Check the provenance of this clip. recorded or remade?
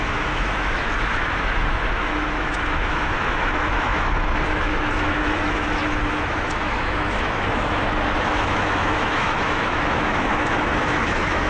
remade